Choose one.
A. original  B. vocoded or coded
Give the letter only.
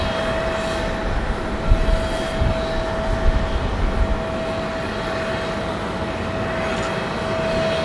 A